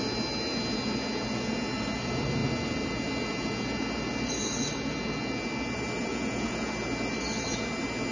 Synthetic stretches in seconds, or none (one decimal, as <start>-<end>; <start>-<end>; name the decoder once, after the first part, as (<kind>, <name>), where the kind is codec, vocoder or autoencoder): 6.1-6.7 (vocoder, Vocos)